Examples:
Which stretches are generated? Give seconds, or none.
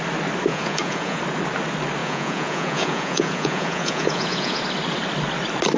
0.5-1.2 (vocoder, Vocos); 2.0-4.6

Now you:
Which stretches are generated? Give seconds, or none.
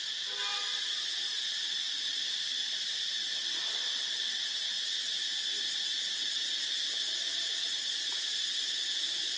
0.5-1.8 (vocoder, BigVGAN v2)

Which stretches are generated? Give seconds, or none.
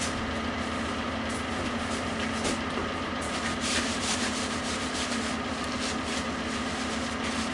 2.8-5.2 (vocoder, BigVGAN v2)